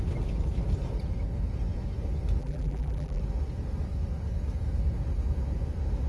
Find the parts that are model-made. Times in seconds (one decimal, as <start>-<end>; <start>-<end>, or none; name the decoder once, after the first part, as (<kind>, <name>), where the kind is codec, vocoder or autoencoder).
2.4-3.2 (vocoder, BigVGAN v2)